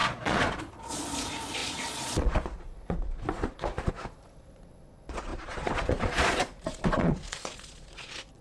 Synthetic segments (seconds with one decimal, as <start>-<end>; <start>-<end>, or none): 0.0-8.4